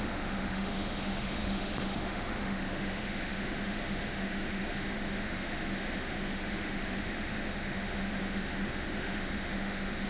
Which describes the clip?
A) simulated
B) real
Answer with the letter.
A